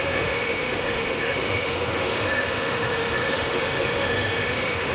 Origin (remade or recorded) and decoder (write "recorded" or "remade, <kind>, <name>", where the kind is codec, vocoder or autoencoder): remade, autoencoder, DAC-VAE